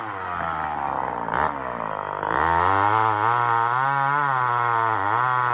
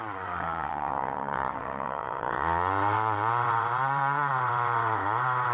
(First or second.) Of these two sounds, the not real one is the second